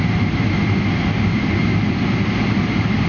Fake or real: real